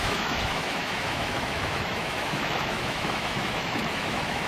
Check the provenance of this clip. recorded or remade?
remade